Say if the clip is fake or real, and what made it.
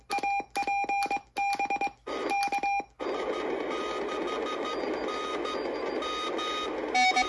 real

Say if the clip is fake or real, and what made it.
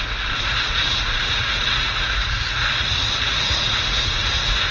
fake, vocoder, Vocos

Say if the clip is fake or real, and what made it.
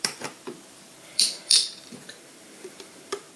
fake, vocoder, BigVGAN v2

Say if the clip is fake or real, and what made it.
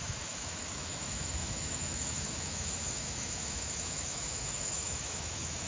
fake, autoencoder, DAC-VAE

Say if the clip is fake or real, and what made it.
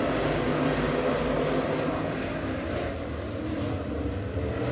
real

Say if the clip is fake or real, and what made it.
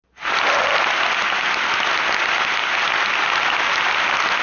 real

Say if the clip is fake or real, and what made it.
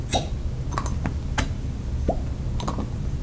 real